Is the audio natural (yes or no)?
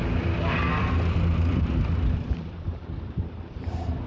no